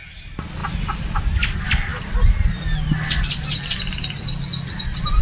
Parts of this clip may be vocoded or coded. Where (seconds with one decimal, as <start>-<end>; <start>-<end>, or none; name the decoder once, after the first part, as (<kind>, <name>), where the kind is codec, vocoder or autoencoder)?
0.6-1.2 (vocoder, BigVGAN v2)